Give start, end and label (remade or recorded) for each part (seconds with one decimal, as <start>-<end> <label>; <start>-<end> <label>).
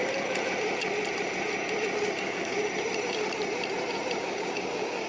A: 0.0-2.2 recorded; 2.2-2.6 remade; 2.6-4.2 recorded; 4.2-5.1 remade